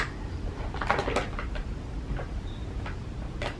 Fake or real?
real